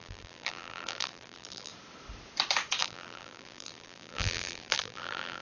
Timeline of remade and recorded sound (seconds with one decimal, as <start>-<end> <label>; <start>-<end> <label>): 0.0-1.7 remade; 1.7-2.8 recorded; 2.8-5.4 remade